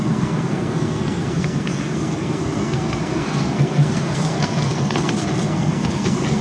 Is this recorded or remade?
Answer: remade